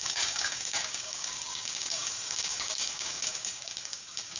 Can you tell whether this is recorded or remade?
remade